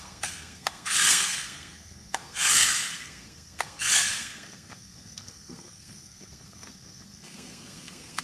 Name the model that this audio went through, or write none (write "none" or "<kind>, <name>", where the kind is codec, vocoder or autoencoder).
codec, SNAC